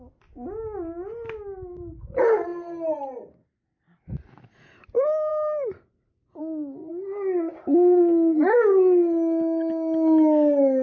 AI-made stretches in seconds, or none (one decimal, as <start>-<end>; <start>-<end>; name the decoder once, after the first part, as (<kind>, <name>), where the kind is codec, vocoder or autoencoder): none